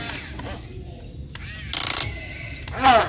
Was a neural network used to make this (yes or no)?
no